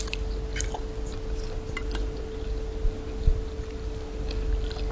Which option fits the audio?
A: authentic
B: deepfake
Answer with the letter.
A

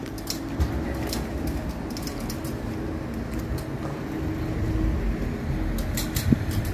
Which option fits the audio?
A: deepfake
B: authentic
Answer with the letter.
B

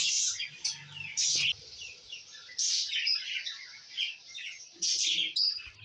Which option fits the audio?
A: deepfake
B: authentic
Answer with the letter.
B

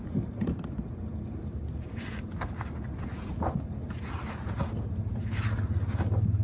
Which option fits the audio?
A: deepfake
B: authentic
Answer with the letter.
B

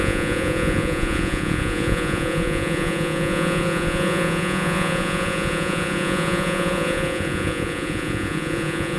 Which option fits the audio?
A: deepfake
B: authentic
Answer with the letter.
A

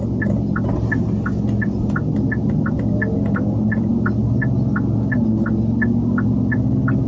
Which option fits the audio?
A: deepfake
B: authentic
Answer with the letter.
B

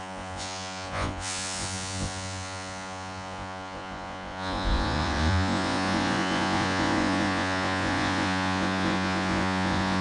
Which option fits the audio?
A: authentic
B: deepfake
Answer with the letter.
B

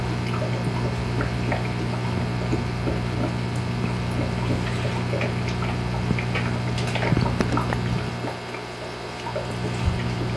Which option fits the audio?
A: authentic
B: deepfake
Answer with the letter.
A